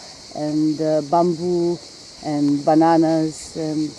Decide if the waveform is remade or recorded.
recorded